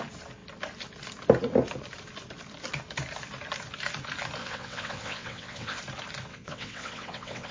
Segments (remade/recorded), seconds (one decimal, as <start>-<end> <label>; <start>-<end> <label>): 0.0-4.4 recorded; 4.4-5.8 remade; 5.8-6.3 recorded; 6.3-7.5 remade